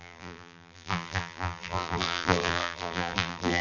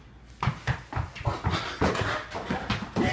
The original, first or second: second